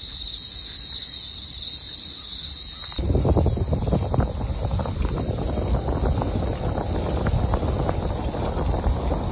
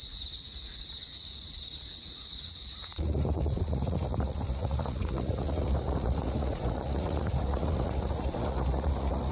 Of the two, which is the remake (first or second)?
second